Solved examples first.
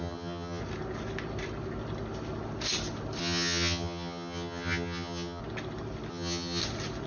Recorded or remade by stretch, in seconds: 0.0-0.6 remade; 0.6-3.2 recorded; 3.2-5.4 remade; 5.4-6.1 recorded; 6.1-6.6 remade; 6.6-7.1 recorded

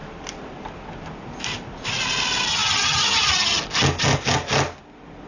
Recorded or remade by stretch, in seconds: 0.0-2.5 recorded; 2.5-3.6 remade; 3.6-5.3 recorded

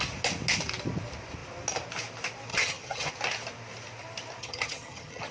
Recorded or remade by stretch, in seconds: 0.0-2.5 recorded; 2.5-3.1 remade; 3.1-4.4 recorded; 4.4-5.3 remade